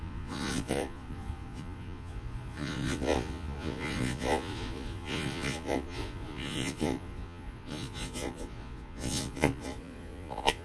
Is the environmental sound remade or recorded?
remade